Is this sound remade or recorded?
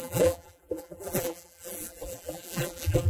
remade